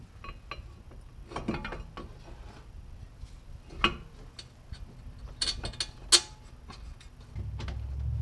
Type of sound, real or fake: real